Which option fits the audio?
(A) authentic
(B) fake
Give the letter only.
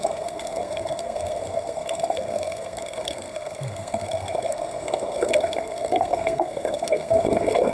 B